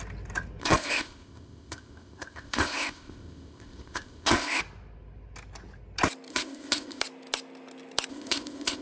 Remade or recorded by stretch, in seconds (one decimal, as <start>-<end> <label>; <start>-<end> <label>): 0.0-0.6 recorded; 0.6-4.6 remade; 4.6-6.3 recorded; 6.3-7.0 remade; 7.0-8.1 recorded; 8.1-8.8 remade